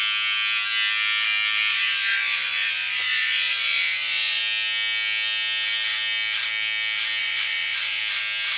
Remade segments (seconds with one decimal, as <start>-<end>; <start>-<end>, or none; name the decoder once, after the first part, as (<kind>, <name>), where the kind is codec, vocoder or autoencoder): 1.7-4.4 (vocoder, Vocos); 7.2-8.0